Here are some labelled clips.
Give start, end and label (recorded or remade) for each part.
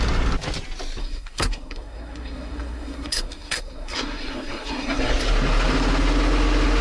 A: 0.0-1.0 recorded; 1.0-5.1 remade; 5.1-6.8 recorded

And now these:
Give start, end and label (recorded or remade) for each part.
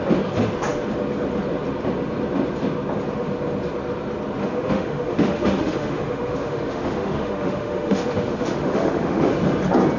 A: 0.0-4.4 recorded; 4.4-9.3 remade; 9.3-10.0 recorded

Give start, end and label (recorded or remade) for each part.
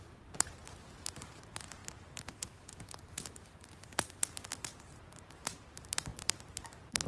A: 0.0-0.6 remade; 0.6-1.2 recorded; 1.2-1.8 remade; 1.8-4.8 recorded; 4.8-7.1 remade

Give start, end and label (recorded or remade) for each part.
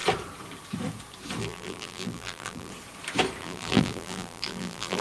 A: 0.0-1.4 recorded; 1.4-2.7 remade; 2.7-3.4 recorded; 3.4-5.0 remade